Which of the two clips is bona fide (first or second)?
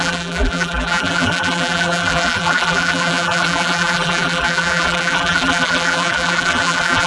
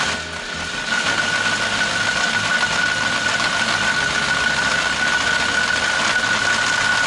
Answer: second